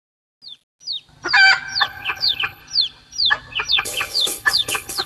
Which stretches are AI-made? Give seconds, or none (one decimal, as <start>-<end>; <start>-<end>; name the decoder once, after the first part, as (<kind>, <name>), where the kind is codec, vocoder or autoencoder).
1.8-2.6 (codec, HILCodec); 3.7-5.1